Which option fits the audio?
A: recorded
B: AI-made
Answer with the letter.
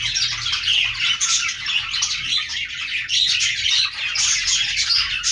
A